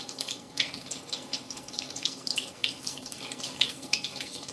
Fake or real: fake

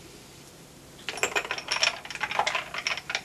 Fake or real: real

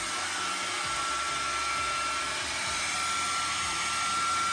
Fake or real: real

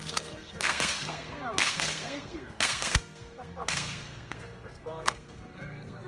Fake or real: fake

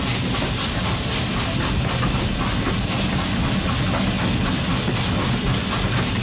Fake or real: real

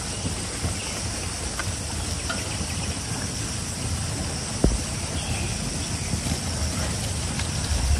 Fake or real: real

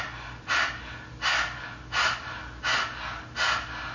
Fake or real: real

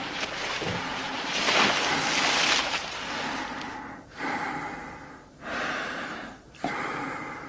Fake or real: real